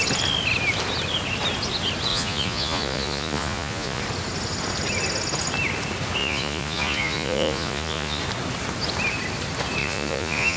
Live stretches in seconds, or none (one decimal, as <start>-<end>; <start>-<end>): 0.0-2.1; 4.0-6.2; 8.2-9.8